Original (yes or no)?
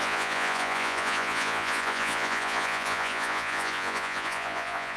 no